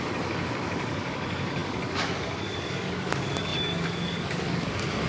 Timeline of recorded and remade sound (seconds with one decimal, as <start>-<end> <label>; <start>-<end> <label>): 0.0-5.1 remade